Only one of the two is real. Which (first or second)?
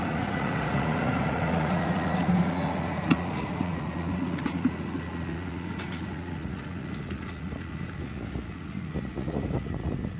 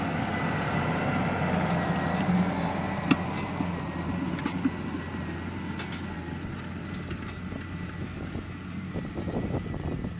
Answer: second